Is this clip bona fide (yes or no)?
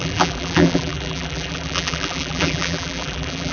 no